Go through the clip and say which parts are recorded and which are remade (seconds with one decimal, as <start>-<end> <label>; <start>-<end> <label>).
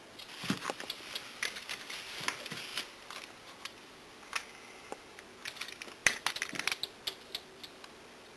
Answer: 0.0-8.4 recorded